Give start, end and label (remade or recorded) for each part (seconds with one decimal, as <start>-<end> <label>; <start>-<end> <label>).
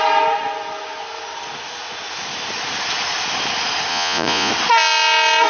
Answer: 0.0-3.9 recorded; 3.9-4.5 remade; 4.5-5.5 recorded